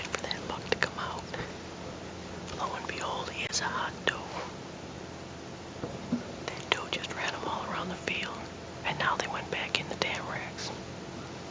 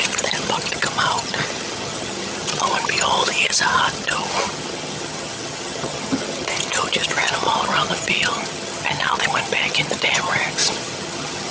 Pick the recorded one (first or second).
first